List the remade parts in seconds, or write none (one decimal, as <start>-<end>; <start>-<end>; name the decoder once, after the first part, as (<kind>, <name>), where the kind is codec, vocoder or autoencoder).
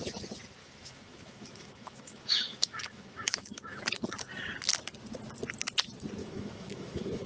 0.6-3.8 (autoencoder, DAC-VAE); 6.2-7.3